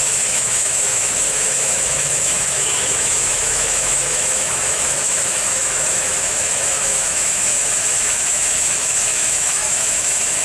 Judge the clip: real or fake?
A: fake